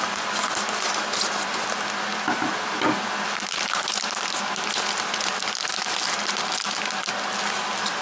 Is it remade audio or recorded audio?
recorded